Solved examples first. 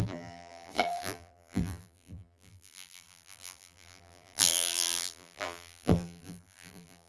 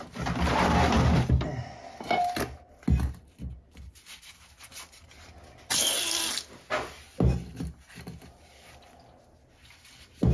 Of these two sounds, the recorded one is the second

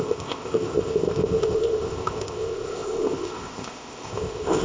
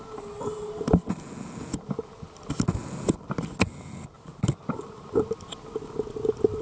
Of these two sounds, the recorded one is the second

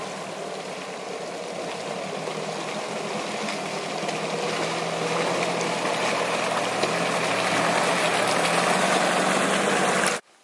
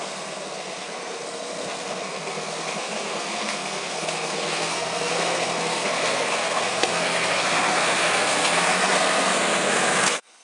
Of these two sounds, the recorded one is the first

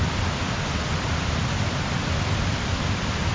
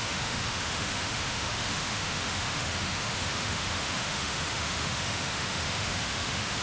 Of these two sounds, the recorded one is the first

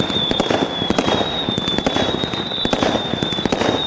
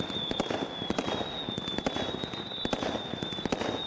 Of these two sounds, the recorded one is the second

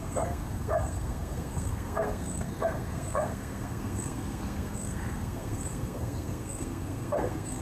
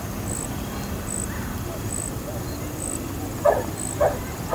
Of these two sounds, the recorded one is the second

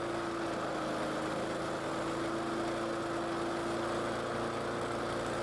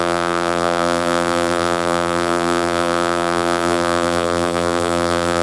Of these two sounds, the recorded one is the first